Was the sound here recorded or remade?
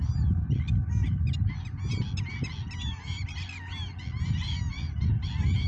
recorded